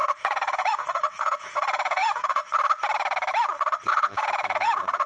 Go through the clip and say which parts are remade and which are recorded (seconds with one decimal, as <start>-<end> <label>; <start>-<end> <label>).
0.0-2.4 remade; 2.4-3.9 recorded; 3.9-5.1 remade

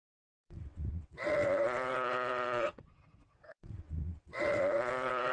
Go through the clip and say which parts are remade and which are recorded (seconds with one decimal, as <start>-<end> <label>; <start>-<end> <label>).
0.0-5.3 remade

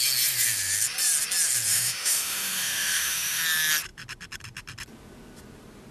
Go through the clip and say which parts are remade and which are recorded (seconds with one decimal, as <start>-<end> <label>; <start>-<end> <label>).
0.0-1.7 recorded; 1.7-3.4 remade; 3.4-5.9 recorded